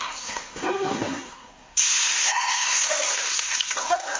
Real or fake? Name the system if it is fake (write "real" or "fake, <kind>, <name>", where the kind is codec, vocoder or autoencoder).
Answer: fake, codec, SNAC